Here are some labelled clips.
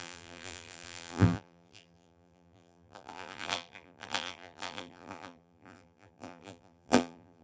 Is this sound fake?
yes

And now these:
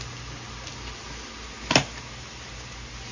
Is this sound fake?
no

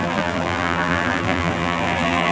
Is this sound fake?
yes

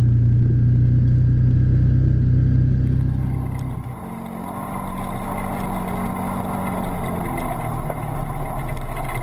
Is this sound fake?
no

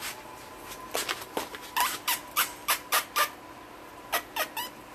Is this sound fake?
no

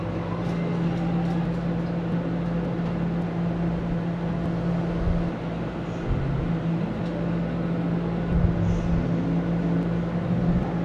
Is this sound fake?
no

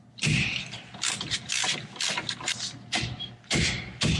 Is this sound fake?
no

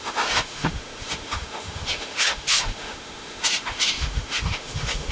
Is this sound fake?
yes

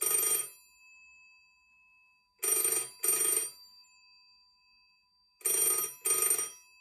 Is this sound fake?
no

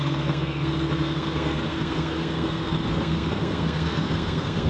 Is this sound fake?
yes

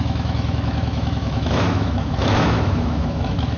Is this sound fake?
yes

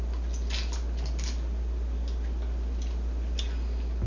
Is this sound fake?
no